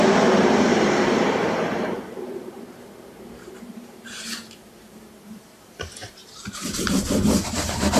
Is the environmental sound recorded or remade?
remade